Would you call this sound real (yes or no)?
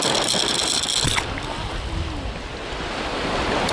yes